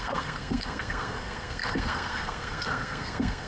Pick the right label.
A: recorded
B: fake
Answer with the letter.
B